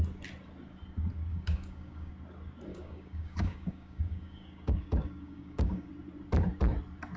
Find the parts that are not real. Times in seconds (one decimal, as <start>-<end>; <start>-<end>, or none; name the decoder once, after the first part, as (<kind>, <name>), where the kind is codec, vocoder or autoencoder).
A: 1.3-2.1 (codec, DAC); 2.7-5.9